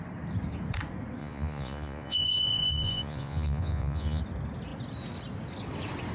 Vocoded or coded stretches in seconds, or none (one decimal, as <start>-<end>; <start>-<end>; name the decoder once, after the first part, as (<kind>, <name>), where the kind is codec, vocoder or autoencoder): 1.2-4.2 (vocoder, Vocos)